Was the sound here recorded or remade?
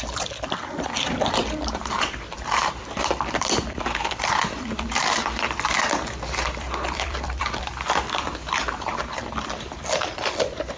remade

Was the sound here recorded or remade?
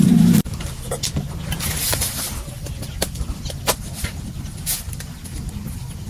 recorded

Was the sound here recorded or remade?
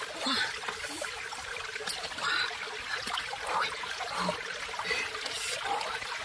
recorded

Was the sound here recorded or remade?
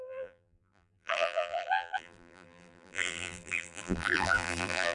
remade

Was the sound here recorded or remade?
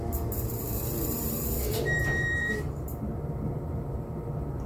remade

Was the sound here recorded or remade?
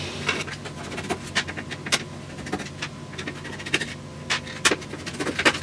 recorded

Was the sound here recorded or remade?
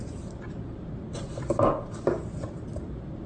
recorded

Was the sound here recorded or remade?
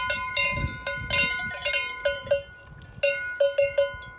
recorded